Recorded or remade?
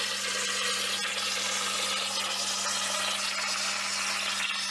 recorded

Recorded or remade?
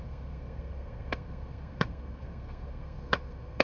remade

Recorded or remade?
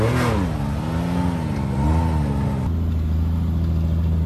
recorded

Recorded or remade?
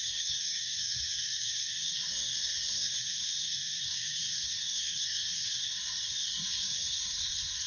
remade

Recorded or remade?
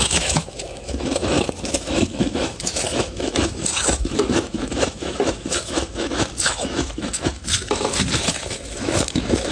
remade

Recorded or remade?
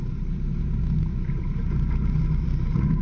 recorded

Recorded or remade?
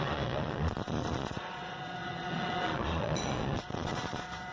remade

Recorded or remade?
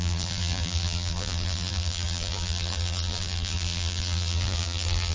remade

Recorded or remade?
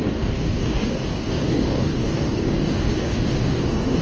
remade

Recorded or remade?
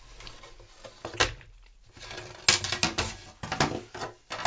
recorded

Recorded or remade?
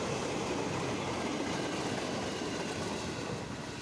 recorded